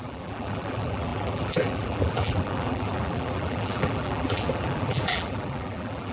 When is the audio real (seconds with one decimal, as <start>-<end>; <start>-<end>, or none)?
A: none